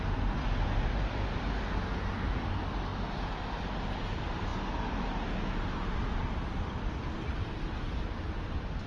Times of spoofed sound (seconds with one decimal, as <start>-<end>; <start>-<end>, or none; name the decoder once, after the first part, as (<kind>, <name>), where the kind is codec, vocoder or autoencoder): none